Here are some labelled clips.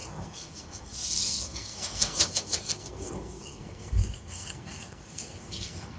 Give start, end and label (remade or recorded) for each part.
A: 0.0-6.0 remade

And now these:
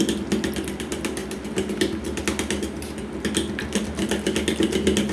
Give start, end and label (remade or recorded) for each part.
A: 0.0-5.1 recorded

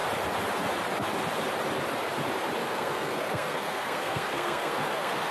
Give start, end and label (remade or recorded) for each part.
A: 0.0-2.6 recorded; 2.6-5.3 remade